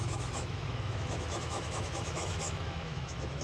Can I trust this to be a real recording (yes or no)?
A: no